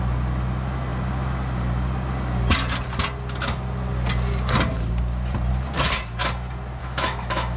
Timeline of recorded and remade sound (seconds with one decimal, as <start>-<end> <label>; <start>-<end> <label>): 0.0-6.8 recorded; 6.8-7.6 remade